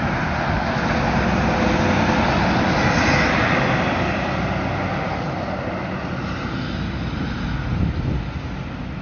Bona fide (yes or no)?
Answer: yes